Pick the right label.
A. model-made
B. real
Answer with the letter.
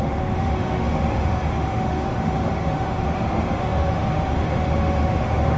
A